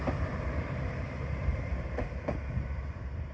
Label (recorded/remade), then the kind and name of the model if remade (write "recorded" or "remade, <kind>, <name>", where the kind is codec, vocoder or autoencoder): remade, vocoder, BigVGAN v2